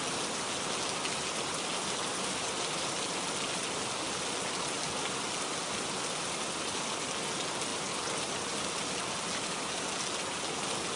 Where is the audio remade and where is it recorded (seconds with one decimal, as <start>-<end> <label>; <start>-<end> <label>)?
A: 0.0-7.7 recorded; 7.7-8.8 remade; 8.8-11.0 recorded